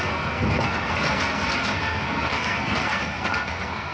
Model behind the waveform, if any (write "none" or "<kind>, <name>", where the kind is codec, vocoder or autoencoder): codec, SNAC